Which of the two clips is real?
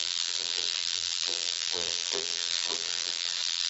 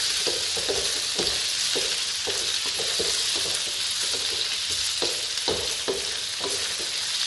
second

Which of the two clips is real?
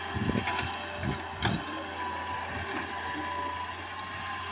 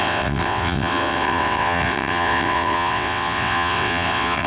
first